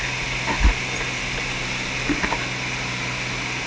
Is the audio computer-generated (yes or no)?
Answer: no